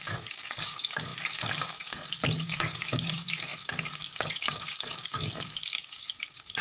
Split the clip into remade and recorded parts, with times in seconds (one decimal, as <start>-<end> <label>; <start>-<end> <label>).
0.0-6.6 remade